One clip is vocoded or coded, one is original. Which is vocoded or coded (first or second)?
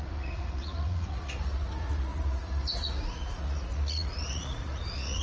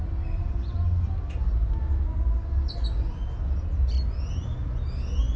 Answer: first